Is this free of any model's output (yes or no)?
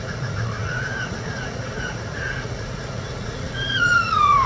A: no